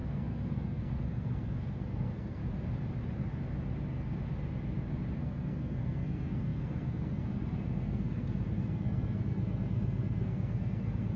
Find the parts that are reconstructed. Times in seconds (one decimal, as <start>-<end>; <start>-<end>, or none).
0.0-2.4; 5.2-11.2